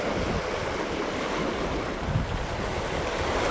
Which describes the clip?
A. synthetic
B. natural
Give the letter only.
B